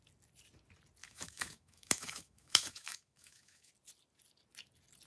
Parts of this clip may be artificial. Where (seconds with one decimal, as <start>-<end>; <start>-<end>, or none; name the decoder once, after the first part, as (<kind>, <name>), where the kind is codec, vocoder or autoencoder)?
1.0-3.7 (autoencoder, DAC-VAE)

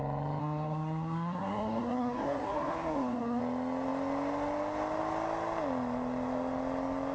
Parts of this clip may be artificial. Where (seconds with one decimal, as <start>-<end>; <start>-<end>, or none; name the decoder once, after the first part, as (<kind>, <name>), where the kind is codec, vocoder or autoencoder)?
0.4-3.4 (codec, SNAC)

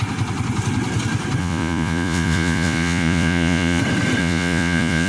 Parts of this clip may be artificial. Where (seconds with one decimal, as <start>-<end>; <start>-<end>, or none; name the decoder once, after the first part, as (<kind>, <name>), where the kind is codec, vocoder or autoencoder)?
1.4-3.8 (vocoder, Vocos); 4.2-5.1